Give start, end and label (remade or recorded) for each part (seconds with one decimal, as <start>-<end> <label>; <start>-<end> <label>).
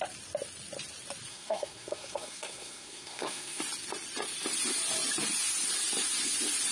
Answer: 0.0-1.3 recorded; 1.3-3.6 remade; 3.6-6.7 recorded